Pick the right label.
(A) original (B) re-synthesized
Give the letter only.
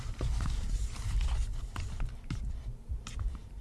B